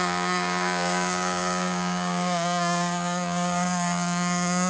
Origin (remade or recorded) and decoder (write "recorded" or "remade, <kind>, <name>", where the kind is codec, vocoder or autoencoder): remade, codec, DAC